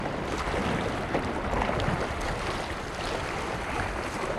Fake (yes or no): no